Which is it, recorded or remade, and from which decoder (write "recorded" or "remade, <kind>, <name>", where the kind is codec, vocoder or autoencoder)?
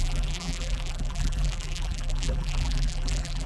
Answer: remade, vocoder, BigVGAN v2